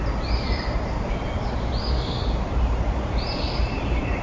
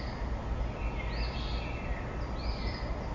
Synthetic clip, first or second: first